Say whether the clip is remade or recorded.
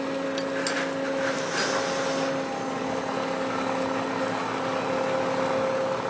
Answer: recorded